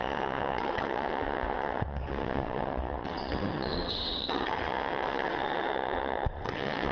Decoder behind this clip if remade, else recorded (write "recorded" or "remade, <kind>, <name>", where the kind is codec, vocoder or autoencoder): remade, vocoder, WaveNeXt